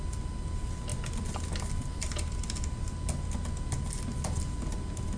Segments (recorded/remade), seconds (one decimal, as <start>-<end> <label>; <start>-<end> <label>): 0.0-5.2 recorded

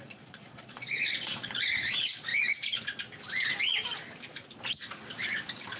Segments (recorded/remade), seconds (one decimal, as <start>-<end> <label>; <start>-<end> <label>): 0.0-2.3 remade; 2.3-5.8 recorded

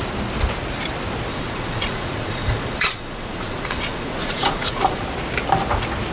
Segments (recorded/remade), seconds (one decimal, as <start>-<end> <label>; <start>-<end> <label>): 0.0-1.3 recorded; 1.3-5.0 remade; 5.0-6.1 recorded

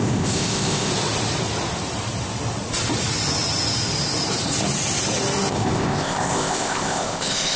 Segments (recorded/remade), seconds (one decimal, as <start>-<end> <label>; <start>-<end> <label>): 0.0-0.9 remade; 0.9-5.5 recorded; 5.5-7.6 remade

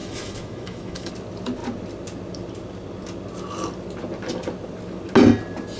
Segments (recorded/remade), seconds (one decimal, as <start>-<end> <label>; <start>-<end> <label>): 0.0-1.1 remade; 1.1-5.8 recorded

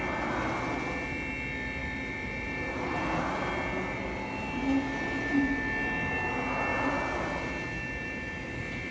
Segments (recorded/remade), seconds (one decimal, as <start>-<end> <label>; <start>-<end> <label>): 0.0-1.8 recorded; 1.8-3.5 remade; 3.5-8.9 recorded

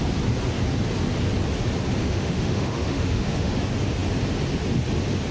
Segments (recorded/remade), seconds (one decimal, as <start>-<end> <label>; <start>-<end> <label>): 0.0-2.0 recorded; 2.0-3.5 remade; 3.5-5.3 recorded